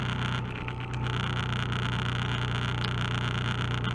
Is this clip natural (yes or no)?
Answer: yes